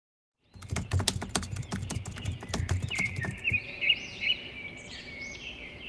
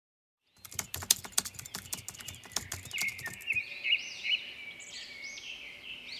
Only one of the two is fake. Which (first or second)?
first